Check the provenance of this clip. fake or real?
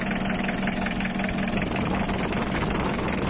real